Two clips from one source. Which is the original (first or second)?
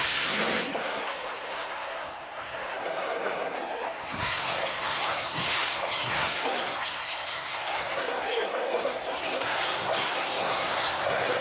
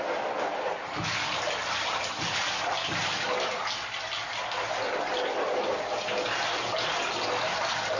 second